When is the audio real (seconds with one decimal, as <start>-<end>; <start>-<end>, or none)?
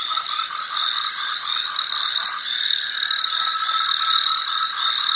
0.0-5.2